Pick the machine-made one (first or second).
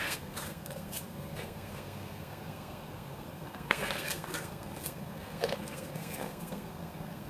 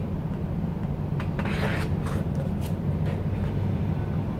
first